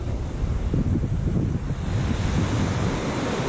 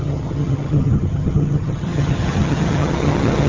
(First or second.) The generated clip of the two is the second